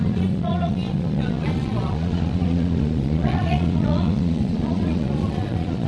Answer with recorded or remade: remade